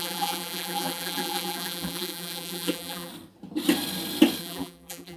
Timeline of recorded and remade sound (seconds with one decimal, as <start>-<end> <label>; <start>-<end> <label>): 0.0-3.1 remade; 3.1-4.4 recorded; 4.4-5.2 remade